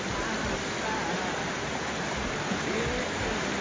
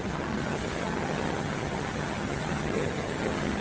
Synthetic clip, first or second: second